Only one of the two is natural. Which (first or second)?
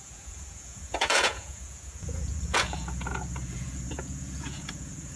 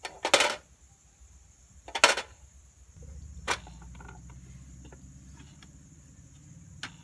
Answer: second